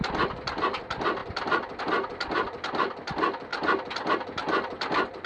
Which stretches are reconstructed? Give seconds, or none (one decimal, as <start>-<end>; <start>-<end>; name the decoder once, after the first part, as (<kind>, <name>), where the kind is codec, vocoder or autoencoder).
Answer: none